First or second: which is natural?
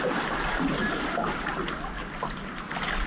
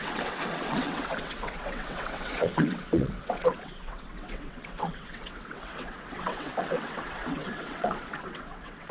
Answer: first